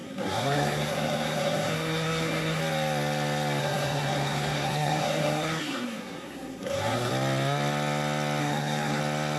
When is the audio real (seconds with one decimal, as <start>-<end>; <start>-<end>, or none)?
2.6-3.6; 7.1-8.4; 9.0-9.4